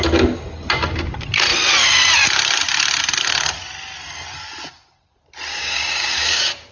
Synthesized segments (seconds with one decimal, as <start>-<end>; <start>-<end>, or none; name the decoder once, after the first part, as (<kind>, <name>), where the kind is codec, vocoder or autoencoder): 5.5-6.7 (codec, DAC)